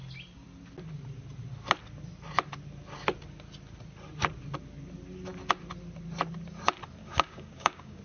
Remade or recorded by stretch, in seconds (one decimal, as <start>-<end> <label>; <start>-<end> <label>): 0.0-7.0 recorded; 7.0-8.0 remade